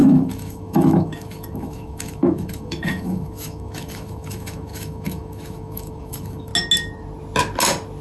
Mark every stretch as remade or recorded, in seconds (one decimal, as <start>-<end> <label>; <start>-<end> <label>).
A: 0.0-6.5 remade; 6.5-8.0 recorded